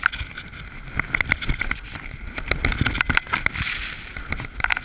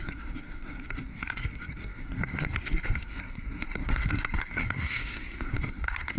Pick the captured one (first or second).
first